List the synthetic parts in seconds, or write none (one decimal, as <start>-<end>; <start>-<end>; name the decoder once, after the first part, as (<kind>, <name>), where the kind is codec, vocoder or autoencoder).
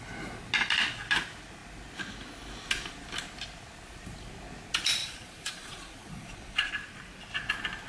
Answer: 5.0-6.7 (vocoder, Vocos)